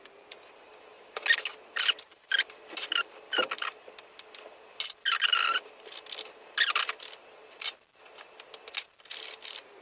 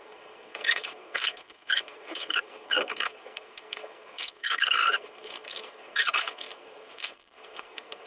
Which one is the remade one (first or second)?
second